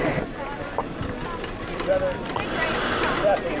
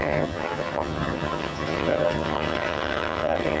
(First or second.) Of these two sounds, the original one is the first